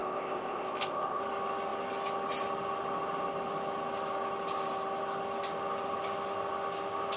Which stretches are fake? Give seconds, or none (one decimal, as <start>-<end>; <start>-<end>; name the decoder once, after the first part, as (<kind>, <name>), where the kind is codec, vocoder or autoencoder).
0.0-1.2 (codec, ZipCodec)